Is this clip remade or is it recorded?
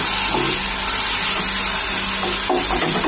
recorded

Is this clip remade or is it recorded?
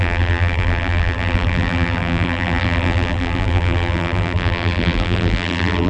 remade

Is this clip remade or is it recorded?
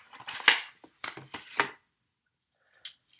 recorded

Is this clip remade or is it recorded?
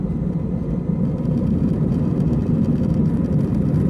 recorded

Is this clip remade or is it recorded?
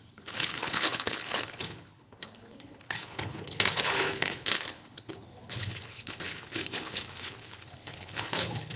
remade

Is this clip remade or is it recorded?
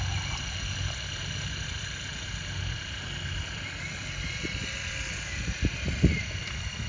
recorded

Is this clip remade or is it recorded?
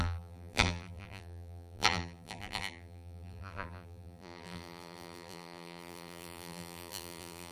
remade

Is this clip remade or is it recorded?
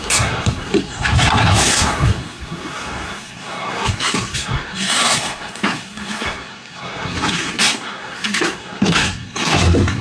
remade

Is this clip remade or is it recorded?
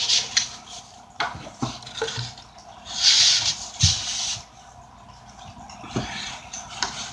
recorded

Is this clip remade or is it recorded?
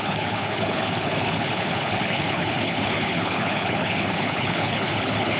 remade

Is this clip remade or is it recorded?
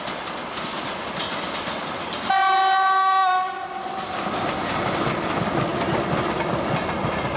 recorded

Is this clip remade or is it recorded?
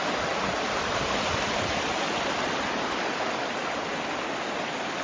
recorded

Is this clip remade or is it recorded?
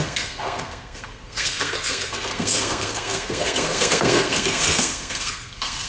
remade